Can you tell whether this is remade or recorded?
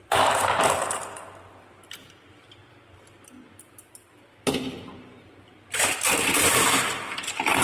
remade